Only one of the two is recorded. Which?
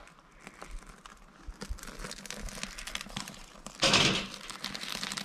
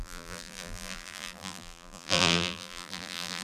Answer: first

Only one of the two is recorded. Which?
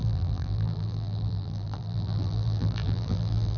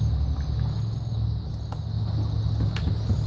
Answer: second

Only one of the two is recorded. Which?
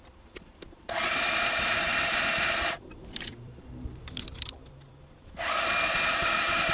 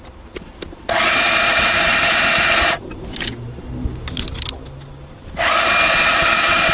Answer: second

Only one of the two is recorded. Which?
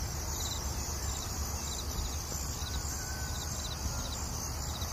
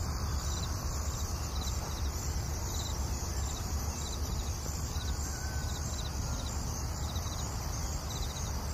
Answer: first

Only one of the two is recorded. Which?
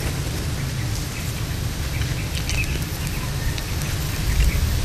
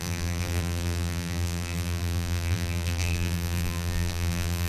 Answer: first